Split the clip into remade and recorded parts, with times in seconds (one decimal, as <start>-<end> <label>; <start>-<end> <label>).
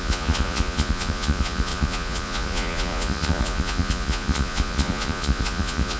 0.0-6.0 remade